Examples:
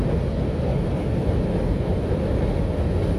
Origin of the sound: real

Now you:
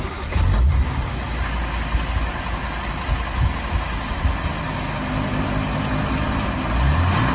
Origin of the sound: real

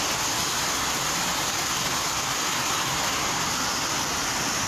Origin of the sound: real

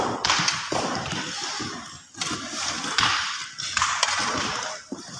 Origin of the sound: real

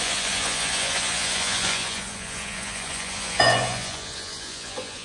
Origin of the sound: fake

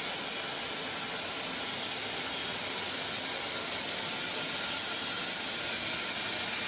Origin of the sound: real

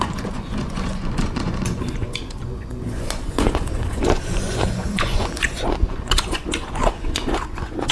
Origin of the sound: fake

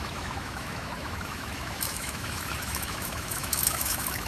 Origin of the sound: fake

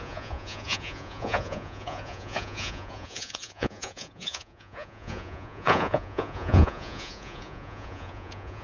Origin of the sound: fake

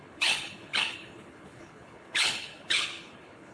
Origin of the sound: fake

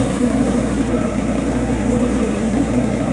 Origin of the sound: fake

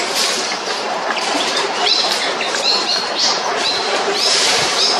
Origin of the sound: fake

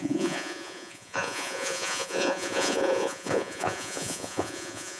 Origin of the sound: fake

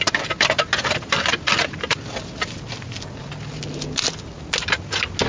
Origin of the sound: real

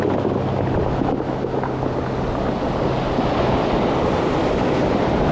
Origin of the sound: real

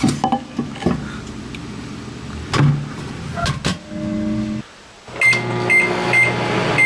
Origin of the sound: real